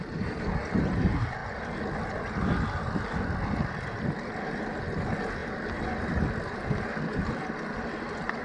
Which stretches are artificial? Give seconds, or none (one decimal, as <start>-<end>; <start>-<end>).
none

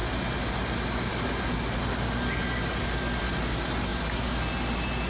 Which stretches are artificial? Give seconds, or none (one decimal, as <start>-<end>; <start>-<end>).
none

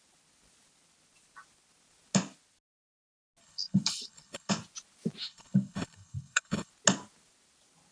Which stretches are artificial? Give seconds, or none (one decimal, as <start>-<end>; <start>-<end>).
3.4-4.5; 5.2-6.7

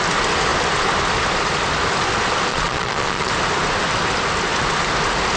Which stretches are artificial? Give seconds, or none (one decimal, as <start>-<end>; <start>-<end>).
2.5-3.3